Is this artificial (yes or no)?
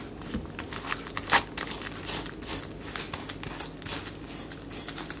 no